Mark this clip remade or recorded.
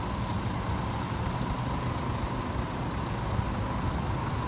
recorded